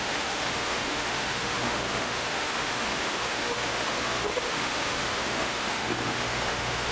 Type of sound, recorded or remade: remade